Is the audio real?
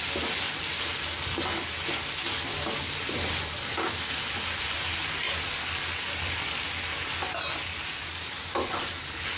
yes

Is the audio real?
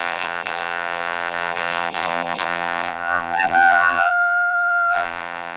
no